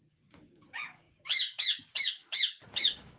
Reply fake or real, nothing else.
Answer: fake